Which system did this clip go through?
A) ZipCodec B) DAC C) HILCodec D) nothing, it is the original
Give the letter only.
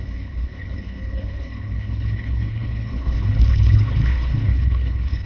C